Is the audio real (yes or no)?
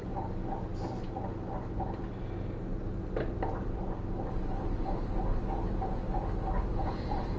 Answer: yes